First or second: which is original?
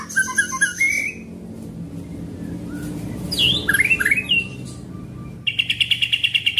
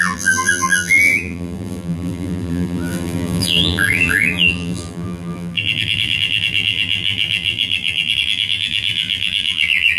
first